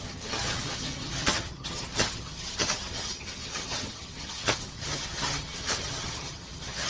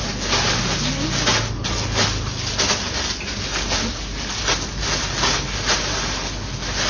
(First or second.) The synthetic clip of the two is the first